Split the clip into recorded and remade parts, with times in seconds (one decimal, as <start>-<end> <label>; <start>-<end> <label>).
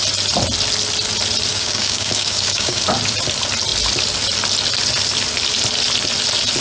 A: 0.0-1.5 recorded; 1.5-2.8 remade; 2.8-6.6 recorded